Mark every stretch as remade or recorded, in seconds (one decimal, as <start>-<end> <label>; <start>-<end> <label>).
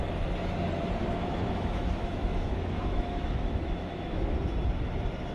0.0-1.0 recorded; 1.0-4.2 remade; 4.2-5.3 recorded